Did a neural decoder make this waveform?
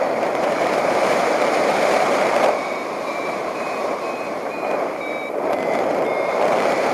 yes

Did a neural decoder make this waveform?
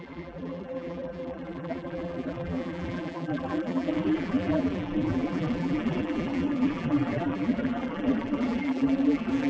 yes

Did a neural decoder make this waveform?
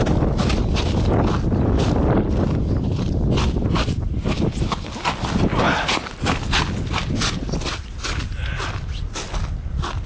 no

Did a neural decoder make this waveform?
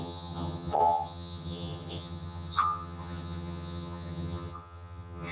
yes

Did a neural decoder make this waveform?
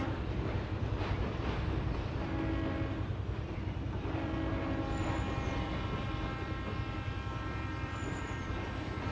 yes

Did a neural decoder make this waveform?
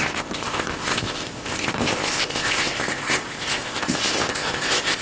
yes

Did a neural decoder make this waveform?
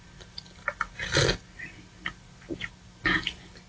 no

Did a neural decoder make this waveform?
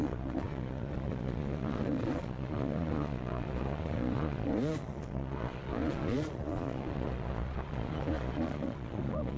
yes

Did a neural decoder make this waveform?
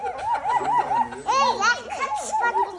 no